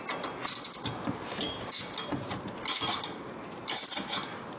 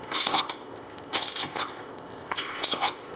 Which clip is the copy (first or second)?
second